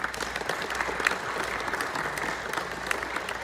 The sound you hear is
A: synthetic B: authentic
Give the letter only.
B